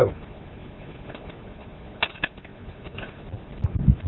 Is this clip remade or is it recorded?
recorded